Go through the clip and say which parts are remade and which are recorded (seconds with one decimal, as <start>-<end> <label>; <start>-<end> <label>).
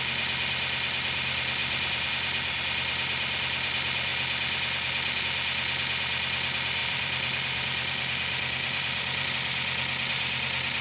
0.0-1.6 recorded; 1.6-2.1 remade; 2.1-6.8 recorded; 6.8-9.3 remade; 9.3-10.8 recorded